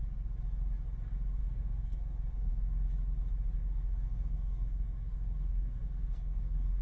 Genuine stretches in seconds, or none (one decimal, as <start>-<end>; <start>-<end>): 0.0-1.4; 2.5-3.6